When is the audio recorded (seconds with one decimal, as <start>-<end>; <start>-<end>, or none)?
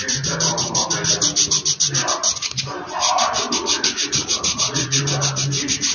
0.0-4.2; 5.0-5.9